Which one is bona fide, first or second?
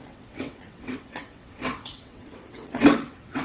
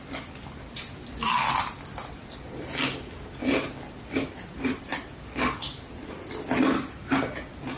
second